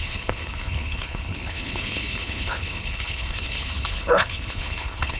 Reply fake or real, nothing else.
fake